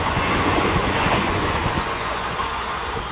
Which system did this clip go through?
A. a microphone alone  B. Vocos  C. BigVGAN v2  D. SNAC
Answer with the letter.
B